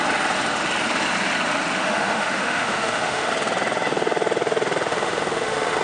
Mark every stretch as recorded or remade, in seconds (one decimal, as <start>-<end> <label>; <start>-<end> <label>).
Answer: 0.0-1.8 recorded; 1.8-3.3 remade; 3.3-4.9 recorded; 4.9-5.8 remade